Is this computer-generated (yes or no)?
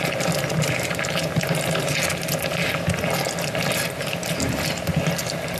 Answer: no